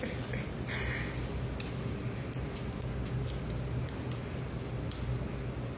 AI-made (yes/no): no